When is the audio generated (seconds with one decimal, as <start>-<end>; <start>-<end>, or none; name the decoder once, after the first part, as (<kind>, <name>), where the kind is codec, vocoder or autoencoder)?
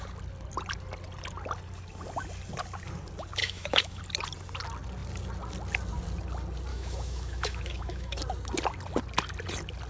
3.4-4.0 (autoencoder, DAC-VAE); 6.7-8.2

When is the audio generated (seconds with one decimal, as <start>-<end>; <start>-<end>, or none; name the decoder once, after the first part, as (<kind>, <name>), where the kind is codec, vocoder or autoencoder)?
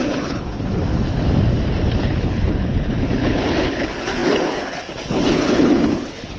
0.0-0.8 (codec, HILCodec); 1.9-6.4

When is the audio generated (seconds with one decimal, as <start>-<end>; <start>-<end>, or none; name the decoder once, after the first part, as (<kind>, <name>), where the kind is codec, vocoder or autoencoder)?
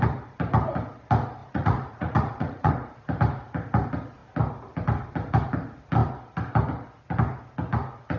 1.4-2.7 (vocoder, Vocos)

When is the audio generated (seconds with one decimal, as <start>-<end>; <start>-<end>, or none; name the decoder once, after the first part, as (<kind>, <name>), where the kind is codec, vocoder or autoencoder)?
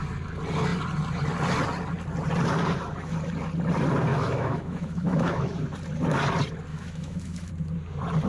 4.1-5.5 (autoencoder, DAC-VAE); 6.7-7.5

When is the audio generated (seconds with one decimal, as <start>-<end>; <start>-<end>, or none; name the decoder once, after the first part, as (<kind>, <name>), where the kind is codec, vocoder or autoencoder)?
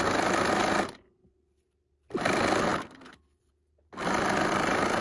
none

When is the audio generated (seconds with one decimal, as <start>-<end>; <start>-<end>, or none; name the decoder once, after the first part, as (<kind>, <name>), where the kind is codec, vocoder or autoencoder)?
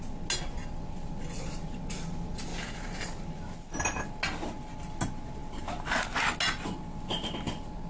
2.5-3.0 (vocoder, Vocos)